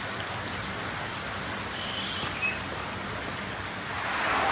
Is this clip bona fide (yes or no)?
yes